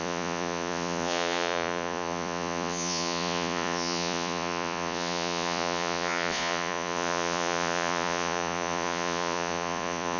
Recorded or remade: remade